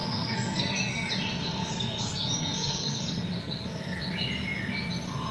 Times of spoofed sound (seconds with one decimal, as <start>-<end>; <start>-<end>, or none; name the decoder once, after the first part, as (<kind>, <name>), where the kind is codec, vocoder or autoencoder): 0.0-1.1 (codec, SNAC); 1.6-3.0; 3.4-4.0